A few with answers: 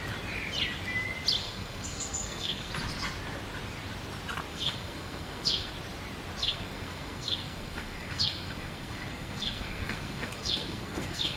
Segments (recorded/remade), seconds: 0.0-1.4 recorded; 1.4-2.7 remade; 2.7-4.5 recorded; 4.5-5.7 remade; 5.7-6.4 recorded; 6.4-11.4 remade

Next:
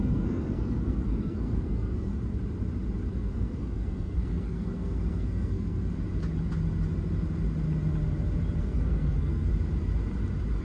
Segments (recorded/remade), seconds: 0.0-2.1 remade; 2.1-3.1 recorded; 3.1-5.9 remade; 5.9-8.6 recorded; 8.6-9.5 remade; 9.5-10.6 recorded

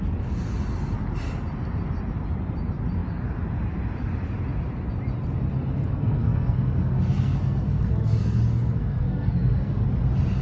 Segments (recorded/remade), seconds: 0.0-5.8 recorded; 5.8-9.8 remade; 9.8-10.4 recorded